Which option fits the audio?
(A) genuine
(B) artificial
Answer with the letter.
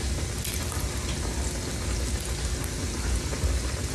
A